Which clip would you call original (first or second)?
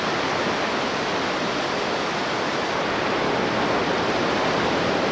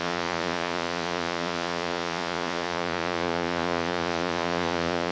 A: first